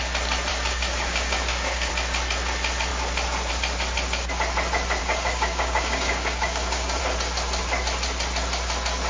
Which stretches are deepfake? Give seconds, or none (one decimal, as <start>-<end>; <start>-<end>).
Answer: 0.5-1.9; 5.0-7.0